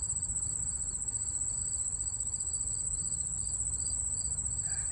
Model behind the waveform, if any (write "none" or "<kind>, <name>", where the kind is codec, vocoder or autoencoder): none